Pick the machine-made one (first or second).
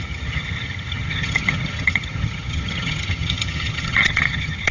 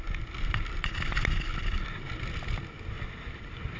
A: first